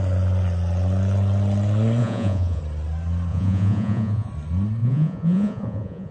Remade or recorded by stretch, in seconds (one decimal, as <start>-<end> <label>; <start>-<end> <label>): 0.0-2.0 recorded; 2.0-2.6 remade; 2.6-3.3 recorded; 3.3-4.3 remade; 4.3-4.8 recorded; 4.8-6.1 remade